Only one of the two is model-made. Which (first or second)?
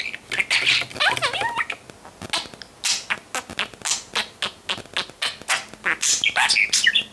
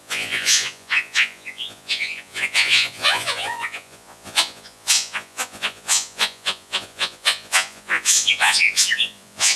second